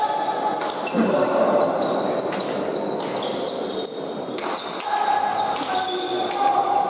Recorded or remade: recorded